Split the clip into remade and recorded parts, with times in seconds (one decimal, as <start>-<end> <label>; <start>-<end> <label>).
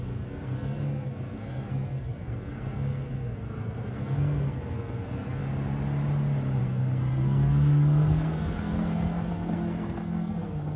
0.0-5.4 remade; 5.4-6.6 recorded; 6.6-10.8 remade